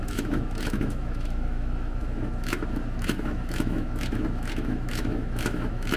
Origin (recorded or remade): remade